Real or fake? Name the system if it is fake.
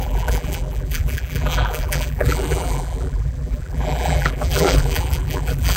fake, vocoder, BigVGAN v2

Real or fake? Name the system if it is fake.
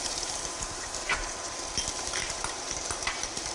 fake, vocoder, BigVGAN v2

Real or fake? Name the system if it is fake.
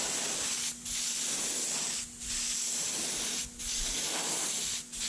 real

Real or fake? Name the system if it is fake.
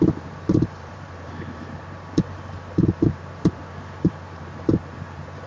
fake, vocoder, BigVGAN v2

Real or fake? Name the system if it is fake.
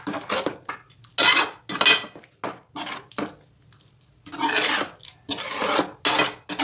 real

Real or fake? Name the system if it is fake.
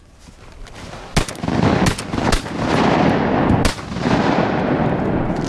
real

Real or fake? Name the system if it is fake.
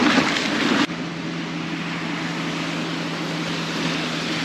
real